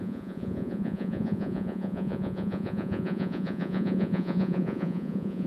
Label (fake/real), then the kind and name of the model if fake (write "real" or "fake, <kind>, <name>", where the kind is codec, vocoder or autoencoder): fake, vocoder, Vocos